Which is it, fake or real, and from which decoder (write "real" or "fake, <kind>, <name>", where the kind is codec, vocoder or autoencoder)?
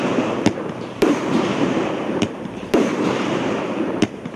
fake, vocoder, BigVGAN v2